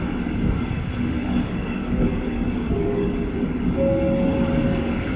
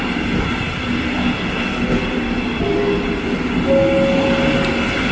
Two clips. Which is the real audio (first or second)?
second